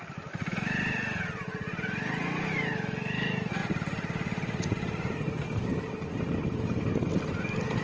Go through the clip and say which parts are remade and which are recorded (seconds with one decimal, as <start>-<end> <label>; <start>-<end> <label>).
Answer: 0.0-3.6 recorded; 3.6-7.1 remade; 7.1-7.8 recorded